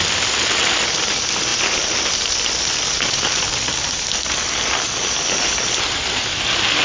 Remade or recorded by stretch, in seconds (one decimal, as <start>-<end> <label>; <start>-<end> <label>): 0.0-6.8 recorded